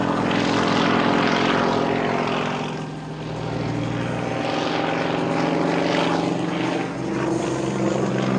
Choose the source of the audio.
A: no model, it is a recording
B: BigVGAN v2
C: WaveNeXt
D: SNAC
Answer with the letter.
A